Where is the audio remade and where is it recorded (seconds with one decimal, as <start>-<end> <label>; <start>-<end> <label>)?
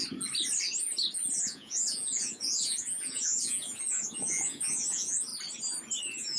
0.0-1.4 recorded; 1.4-5.3 remade; 5.3-6.0 recorded; 6.0-6.4 remade